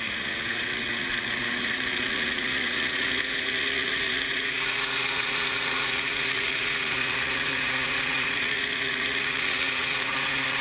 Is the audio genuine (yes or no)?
no